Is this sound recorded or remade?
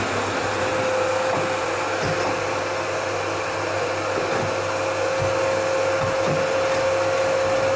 recorded